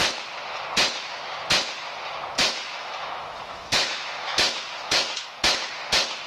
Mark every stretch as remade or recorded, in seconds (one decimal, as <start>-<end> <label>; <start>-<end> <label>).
0.0-2.4 recorded; 2.4-5.4 remade; 5.4-6.3 recorded